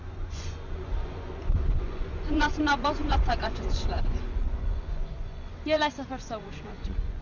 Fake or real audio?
fake